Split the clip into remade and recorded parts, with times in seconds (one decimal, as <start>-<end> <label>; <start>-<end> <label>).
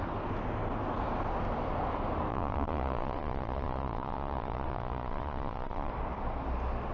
0.0-2.3 recorded; 2.3-5.9 remade; 5.9-6.9 recorded